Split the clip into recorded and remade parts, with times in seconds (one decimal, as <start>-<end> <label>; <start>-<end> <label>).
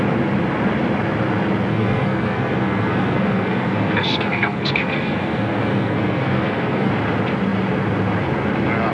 0.0-1.7 recorded; 1.7-6.9 remade; 6.9-8.9 recorded